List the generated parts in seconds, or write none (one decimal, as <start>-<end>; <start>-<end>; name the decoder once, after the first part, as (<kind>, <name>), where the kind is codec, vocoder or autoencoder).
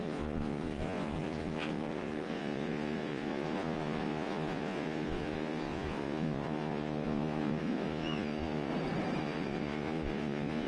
0.0-8.7 (vocoder, Vocos); 9.2-10.7